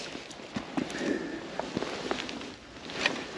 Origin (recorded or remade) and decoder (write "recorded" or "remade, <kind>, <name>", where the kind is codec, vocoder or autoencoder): recorded